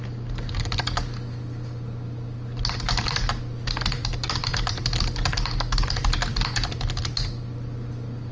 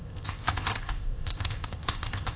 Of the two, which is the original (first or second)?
first